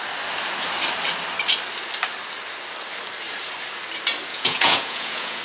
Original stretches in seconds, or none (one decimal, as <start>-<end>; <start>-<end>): 0.0-4.3